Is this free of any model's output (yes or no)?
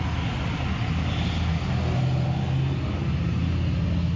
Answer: yes